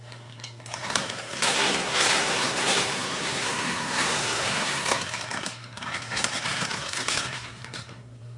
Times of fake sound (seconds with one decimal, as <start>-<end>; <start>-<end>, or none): 0.0-8.4